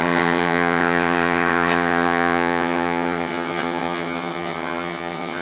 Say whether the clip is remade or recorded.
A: remade